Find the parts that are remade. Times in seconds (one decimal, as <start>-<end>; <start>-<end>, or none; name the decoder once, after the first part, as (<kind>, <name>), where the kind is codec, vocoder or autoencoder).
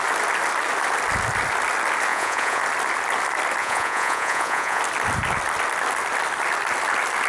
2.1-2.6 (vocoder, Vocos); 3.6-4.8